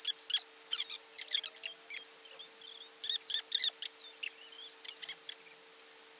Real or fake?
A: real